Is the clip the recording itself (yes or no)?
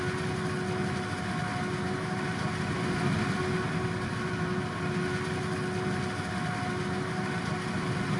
yes